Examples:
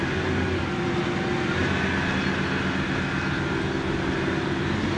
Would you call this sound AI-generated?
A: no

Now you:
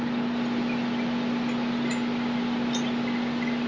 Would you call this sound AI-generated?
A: no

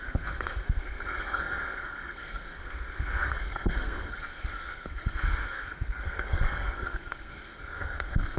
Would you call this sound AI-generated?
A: yes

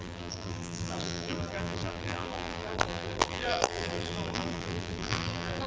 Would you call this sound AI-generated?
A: yes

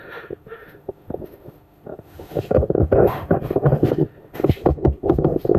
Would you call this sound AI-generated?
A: yes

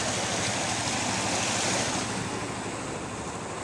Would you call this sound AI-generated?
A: no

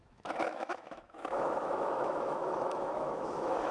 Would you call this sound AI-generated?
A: yes